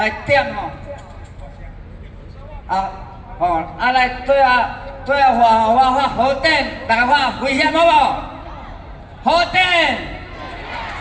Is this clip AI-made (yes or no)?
no